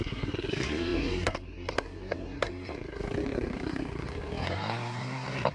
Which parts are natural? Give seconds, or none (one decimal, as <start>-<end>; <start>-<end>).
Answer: none